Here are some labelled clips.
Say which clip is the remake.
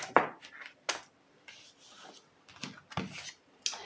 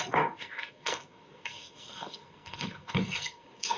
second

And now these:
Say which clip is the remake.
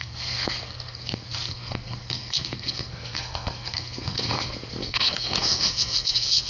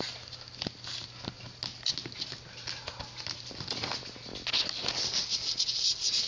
first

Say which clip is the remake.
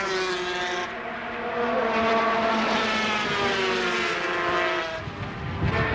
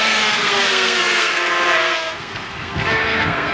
second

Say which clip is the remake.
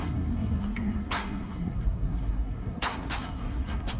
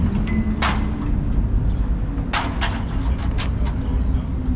first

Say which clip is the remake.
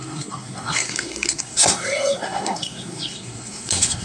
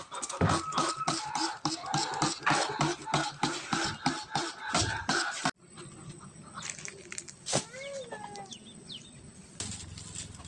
first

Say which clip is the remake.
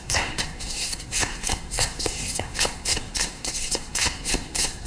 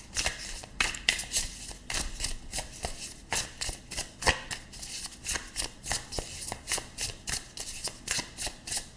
first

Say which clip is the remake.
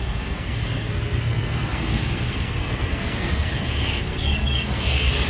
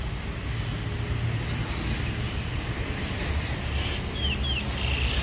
first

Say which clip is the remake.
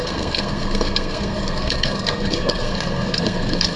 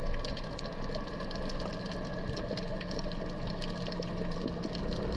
first